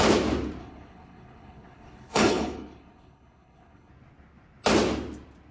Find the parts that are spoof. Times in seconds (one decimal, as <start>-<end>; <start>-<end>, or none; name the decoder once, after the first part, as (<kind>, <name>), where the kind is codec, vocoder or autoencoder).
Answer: 0.6-3.9 (codec, HILCodec)